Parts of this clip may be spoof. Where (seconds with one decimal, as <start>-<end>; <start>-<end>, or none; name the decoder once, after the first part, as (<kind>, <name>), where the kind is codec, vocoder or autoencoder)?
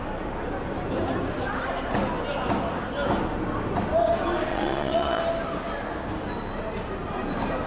4.5-5.2 (vocoder, Vocos)